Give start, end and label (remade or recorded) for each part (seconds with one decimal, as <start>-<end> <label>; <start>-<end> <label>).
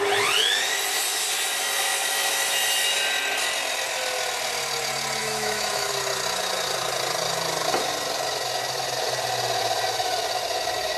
0.0-5.2 recorded; 5.2-5.9 remade; 5.9-11.0 recorded